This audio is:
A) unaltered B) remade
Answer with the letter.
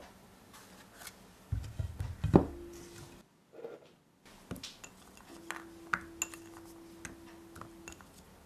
A